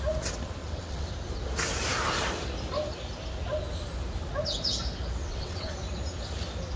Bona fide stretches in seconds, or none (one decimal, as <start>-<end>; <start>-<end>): 0.0-0.6; 1.1-5.2; 5.7-6.8